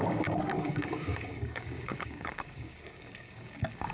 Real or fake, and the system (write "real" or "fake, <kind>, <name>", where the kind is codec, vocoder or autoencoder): fake, codec, DAC